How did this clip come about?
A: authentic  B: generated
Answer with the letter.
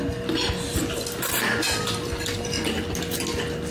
A